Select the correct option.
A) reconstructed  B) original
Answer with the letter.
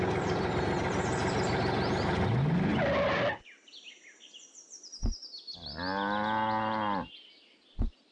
B